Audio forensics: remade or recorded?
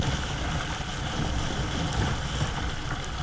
recorded